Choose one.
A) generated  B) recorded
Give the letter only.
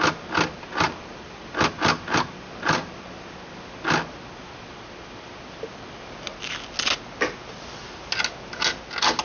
B